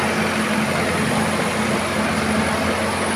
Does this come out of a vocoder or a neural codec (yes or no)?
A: no